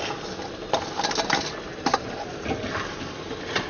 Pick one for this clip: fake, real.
real